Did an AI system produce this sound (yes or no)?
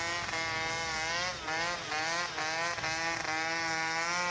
no